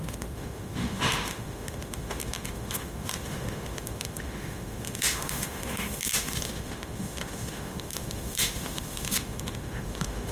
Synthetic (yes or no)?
yes